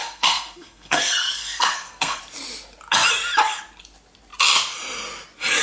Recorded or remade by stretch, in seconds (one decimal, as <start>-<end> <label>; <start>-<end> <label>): 0.0-2.2 remade; 2.2-5.6 recorded